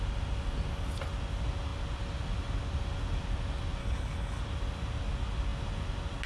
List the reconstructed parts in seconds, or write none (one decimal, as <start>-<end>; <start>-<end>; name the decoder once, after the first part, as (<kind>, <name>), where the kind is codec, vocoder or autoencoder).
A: 3.8-4.4 (codec, HILCodec)